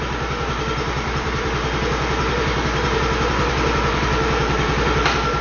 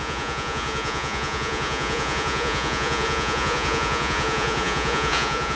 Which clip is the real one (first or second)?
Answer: first